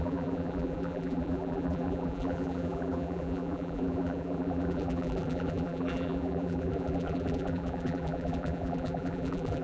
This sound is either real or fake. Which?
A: fake